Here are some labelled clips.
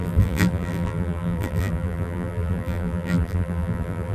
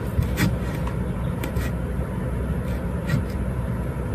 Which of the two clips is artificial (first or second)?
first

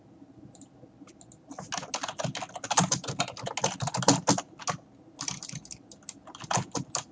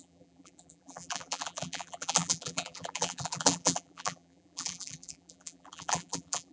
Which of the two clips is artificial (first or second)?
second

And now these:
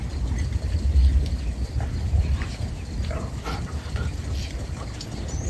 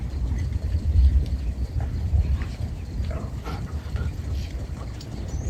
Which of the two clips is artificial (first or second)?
second